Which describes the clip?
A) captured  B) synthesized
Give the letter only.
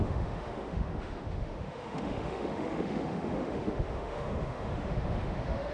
B